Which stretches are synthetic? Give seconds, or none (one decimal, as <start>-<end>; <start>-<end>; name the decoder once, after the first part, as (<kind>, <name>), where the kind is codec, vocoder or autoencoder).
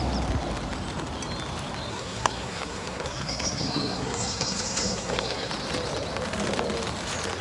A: 1.9-5.5 (codec, SNAC)